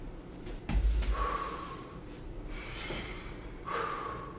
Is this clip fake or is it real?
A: fake